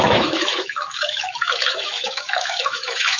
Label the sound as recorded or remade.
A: remade